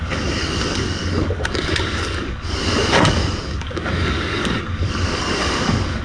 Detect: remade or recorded remade